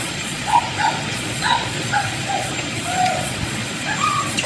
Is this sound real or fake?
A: fake